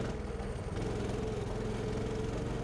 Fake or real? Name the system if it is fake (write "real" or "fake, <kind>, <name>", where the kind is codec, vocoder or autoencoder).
real